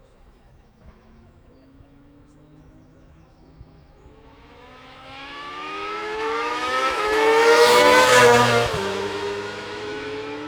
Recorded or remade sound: remade